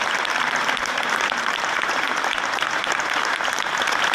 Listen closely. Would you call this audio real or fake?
fake